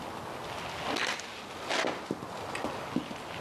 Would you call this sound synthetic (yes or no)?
no